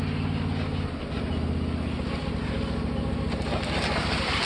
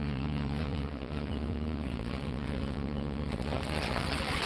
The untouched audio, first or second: first